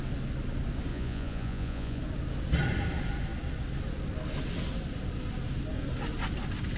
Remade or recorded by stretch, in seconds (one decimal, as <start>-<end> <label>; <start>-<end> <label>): 0.0-0.9 recorded; 0.9-2.0 remade; 2.0-6.8 recorded